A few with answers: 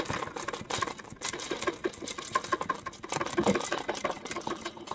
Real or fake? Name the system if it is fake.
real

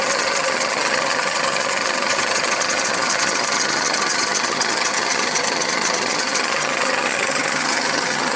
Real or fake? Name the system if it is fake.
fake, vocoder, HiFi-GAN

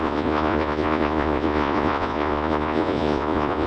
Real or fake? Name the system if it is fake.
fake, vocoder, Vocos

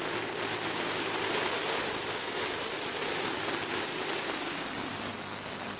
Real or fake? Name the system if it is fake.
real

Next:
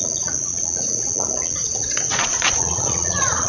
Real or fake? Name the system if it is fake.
fake, vocoder, Vocos